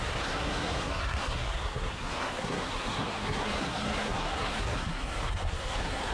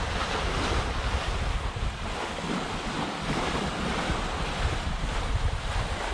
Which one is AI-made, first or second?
first